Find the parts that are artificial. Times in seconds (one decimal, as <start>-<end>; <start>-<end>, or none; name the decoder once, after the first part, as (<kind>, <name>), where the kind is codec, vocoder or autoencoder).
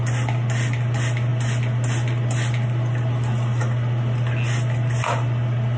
none